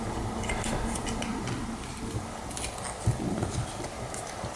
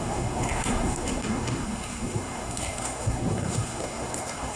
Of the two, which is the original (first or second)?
first